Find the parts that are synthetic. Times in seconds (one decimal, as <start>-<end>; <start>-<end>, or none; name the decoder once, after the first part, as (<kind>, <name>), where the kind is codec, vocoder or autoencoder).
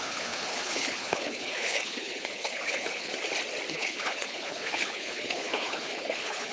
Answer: 0.0-3.1 (codec, HILCodec); 3.7-6.5